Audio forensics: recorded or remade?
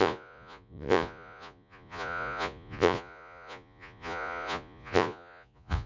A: remade